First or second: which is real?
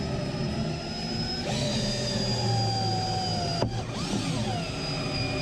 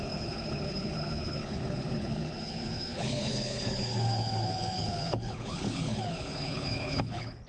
first